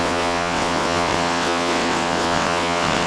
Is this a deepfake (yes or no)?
yes